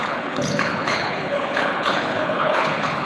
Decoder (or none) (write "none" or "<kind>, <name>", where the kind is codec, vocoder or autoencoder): codec, HILCodec